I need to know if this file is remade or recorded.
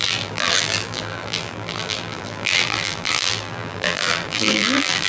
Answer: remade